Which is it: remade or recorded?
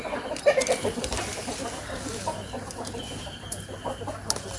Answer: recorded